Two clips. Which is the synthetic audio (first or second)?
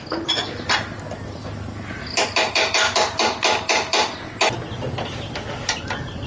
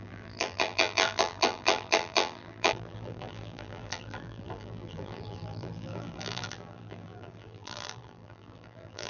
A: second